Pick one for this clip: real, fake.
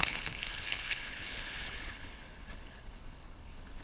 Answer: fake